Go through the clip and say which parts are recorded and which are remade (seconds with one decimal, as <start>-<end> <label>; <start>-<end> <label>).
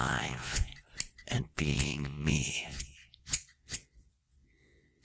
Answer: 0.0-0.7 remade; 0.7-1.4 recorded; 1.4-5.0 remade